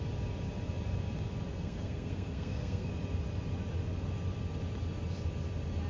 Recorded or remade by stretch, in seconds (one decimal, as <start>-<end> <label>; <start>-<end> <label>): 0.0-1.5 recorded; 1.5-2.9 remade; 2.9-5.9 recorded